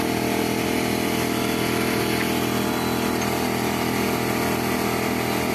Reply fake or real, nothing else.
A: real